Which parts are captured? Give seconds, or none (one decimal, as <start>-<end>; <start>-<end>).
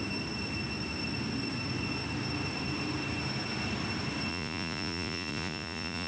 0.0-4.3